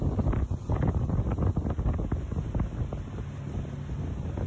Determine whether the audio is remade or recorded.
recorded